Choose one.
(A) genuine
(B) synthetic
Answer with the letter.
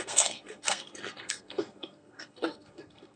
B